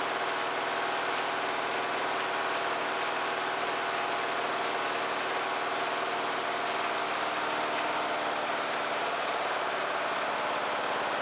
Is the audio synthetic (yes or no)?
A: no